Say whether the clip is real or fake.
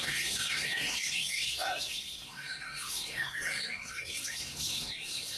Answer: fake